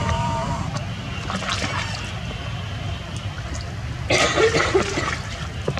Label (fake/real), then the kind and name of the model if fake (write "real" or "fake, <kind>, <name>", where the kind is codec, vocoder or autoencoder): real